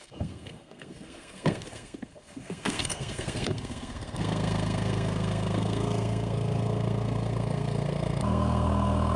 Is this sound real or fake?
fake